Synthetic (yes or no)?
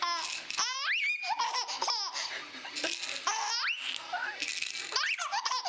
no